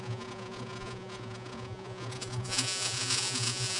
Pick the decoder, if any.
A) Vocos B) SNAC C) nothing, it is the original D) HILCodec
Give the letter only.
A